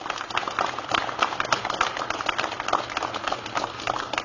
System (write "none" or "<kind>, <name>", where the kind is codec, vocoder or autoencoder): none